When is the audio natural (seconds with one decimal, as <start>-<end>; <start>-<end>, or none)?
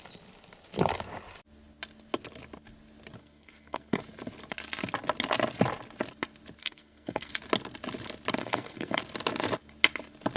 0.0-3.2; 4.0-6.6; 7.3-8.4; 9.0-10.4